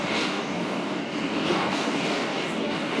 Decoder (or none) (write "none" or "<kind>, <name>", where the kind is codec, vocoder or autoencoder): codec, DAC